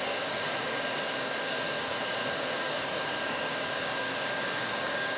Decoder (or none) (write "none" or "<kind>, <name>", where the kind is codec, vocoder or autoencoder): codec, DAC